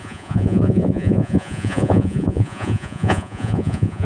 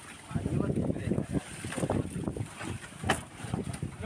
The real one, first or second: second